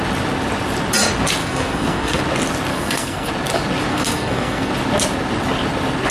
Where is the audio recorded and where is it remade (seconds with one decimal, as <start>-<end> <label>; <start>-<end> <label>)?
0.0-1.4 recorded; 1.4-2.2 remade; 2.2-2.7 recorded; 2.7-3.3 remade; 3.3-3.9 recorded; 3.9-4.7 remade; 4.7-6.1 recorded